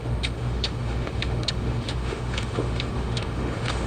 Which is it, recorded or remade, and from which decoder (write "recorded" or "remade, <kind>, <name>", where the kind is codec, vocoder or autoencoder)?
remade, autoencoder, DAC-VAE